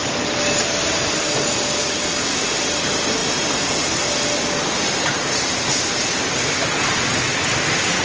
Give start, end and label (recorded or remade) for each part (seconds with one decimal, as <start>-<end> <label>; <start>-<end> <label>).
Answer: 0.0-8.0 recorded